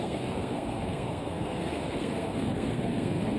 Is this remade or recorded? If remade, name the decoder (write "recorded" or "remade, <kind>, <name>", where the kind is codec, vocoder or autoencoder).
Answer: remade, codec, SNAC